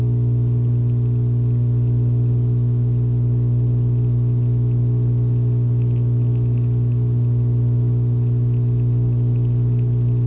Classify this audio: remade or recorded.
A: recorded